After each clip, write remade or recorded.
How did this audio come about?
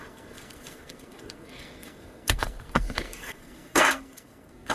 remade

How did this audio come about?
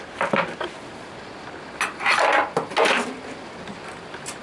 recorded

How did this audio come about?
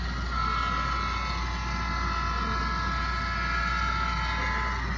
recorded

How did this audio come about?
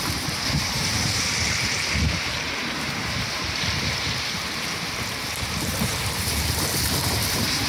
remade